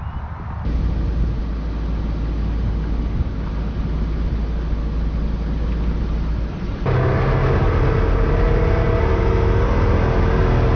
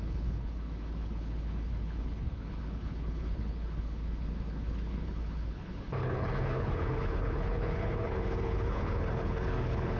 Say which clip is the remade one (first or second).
second